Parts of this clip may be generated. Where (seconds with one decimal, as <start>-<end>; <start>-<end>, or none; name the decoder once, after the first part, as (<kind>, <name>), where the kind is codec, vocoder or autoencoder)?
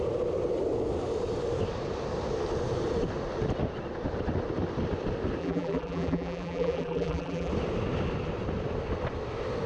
5.4-7.5 (vocoder, BigVGAN v2)